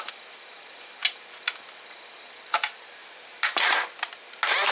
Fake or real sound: real